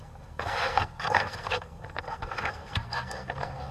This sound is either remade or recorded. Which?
remade